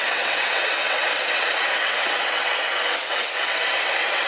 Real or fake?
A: fake